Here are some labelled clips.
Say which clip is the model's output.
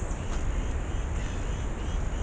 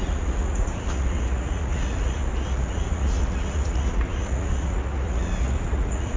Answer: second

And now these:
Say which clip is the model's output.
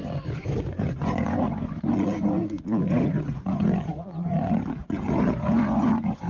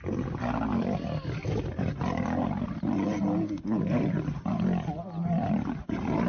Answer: first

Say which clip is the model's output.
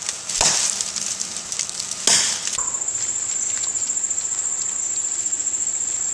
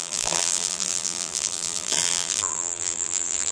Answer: second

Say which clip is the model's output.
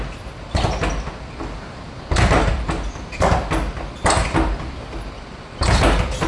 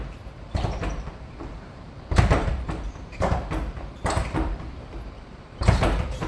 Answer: second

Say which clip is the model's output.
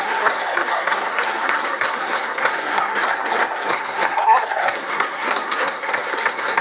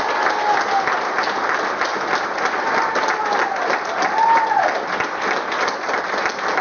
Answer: first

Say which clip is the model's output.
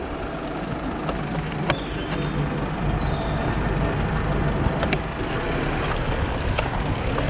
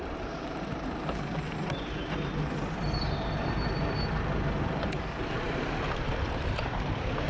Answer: second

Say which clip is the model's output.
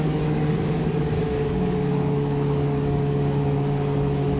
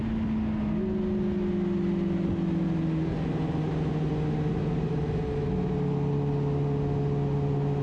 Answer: first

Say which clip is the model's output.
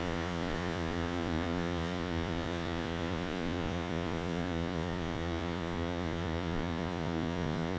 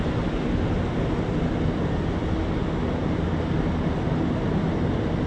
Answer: first